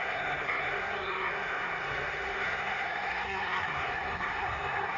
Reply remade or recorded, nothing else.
remade